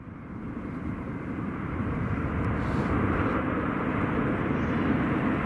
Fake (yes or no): yes